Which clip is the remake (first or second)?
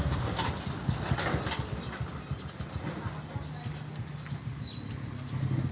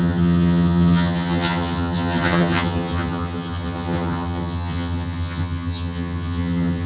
second